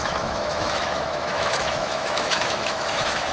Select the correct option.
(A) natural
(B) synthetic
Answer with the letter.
B